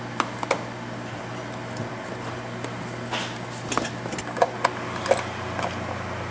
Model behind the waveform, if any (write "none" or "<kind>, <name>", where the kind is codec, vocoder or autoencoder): none